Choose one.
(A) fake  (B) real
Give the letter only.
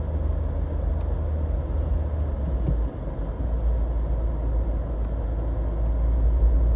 B